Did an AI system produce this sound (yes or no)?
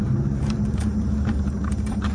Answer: yes